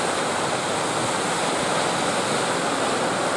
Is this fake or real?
real